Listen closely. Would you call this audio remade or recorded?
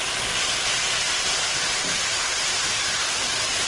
recorded